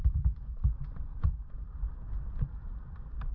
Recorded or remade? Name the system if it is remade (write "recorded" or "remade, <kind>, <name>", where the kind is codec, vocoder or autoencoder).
remade, vocoder, BigVGAN v2